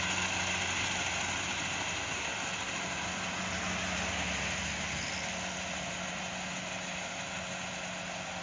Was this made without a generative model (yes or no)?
yes